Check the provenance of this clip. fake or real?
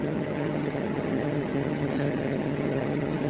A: fake